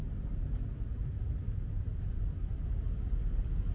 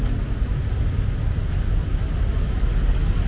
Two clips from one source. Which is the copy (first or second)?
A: first